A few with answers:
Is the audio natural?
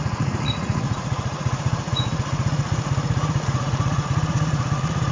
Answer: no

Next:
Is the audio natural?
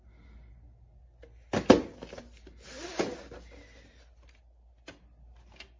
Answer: yes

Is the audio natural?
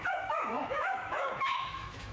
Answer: no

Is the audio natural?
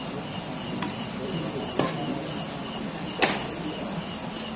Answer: yes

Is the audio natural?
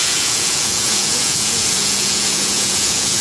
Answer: no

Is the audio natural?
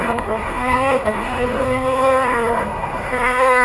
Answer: no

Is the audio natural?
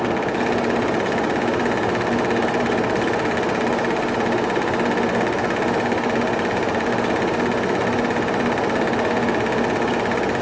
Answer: yes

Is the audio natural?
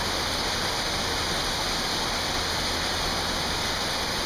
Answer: yes